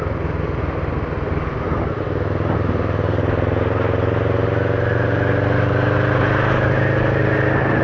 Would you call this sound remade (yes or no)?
no